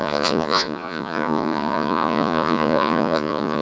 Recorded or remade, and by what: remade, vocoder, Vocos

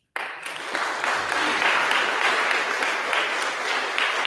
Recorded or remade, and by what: recorded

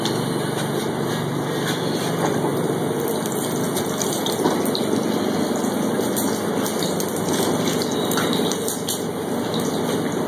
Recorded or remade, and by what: recorded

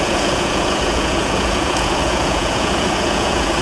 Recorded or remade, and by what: remade, vocoder, Vocos